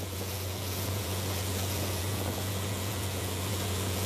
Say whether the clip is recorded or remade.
remade